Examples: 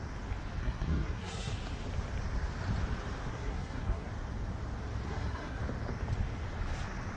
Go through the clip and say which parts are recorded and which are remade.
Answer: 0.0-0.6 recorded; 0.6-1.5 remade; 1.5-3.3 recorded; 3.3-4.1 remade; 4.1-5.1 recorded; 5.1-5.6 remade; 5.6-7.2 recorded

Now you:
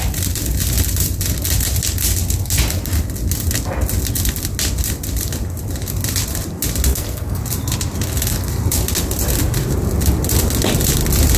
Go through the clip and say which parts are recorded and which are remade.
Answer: 0.0-6.9 recorded; 6.9-7.4 remade; 7.4-11.4 recorded